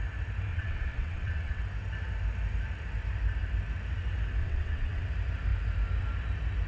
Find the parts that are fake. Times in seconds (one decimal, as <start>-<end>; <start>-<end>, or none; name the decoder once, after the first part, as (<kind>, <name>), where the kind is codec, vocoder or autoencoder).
0.5-1.6 (vocoder, WaveNeXt); 4.4-5.0